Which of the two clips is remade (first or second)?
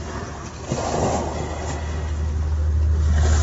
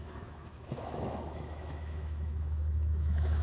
second